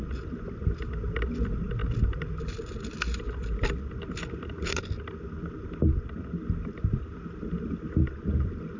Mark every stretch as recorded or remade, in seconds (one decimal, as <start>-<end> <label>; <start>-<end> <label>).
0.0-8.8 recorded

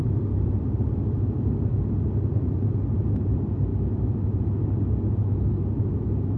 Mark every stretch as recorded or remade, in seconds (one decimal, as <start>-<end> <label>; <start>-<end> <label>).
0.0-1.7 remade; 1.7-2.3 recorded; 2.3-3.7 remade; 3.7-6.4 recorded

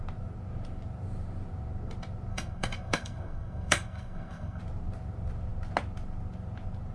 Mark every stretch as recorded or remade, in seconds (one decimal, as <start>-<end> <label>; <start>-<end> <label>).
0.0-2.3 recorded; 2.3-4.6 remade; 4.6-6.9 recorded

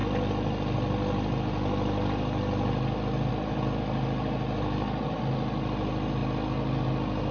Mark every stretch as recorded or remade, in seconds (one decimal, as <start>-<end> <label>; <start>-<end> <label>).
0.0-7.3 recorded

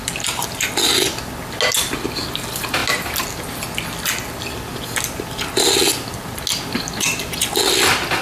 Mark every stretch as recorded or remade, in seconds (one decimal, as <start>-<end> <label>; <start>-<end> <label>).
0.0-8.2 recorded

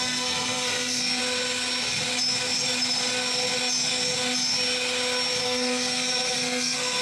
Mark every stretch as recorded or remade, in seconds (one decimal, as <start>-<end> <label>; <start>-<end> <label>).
0.0-1.2 remade; 1.2-5.4 recorded; 5.4-7.0 remade